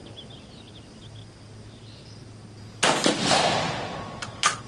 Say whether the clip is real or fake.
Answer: real